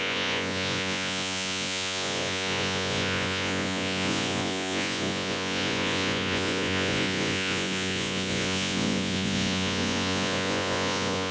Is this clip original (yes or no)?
no